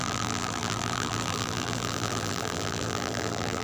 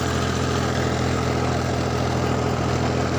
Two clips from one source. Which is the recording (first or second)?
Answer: second